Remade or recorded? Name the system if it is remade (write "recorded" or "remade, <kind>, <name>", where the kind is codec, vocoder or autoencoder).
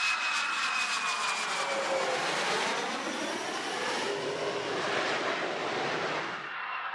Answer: recorded